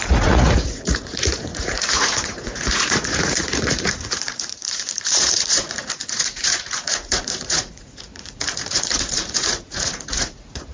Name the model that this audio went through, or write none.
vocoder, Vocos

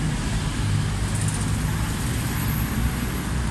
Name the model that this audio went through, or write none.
none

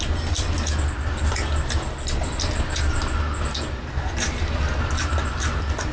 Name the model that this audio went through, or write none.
none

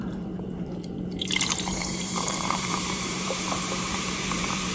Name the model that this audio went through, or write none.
vocoder, BigVGAN v2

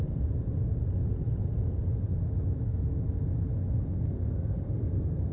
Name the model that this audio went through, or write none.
none